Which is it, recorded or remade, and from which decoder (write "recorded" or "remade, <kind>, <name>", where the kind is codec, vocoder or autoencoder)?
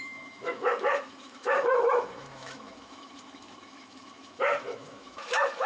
remade, autoencoder, DAC-VAE